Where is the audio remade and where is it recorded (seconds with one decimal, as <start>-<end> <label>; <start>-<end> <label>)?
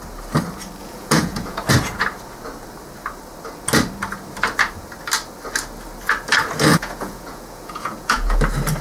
0.0-0.8 recorded; 0.8-1.7 remade; 1.7-6.7 recorded; 6.7-8.4 remade; 8.4-8.8 recorded